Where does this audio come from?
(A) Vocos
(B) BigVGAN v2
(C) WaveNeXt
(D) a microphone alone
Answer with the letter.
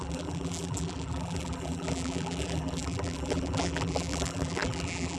B